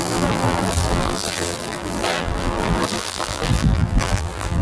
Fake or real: fake